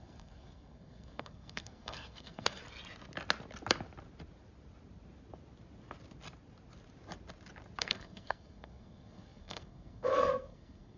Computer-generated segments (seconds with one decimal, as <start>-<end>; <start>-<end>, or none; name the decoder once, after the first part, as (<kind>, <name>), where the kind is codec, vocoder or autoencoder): 0.0-2.6 (codec, SNAC); 7.8-11.0